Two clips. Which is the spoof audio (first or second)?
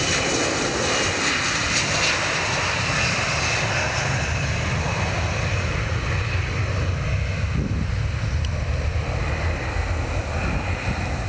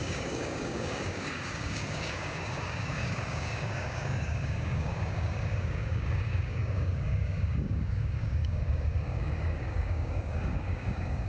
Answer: second